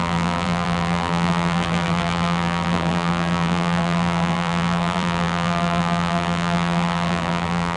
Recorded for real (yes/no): no